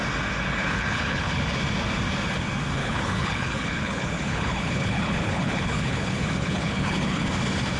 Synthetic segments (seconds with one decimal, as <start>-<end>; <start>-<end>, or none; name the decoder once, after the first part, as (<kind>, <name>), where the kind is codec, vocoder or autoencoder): 0.6-1.4 (codec, HILCodec); 2.8-7.3